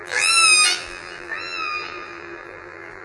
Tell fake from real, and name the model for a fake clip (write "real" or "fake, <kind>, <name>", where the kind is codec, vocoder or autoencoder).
fake, vocoder, BigVGAN v2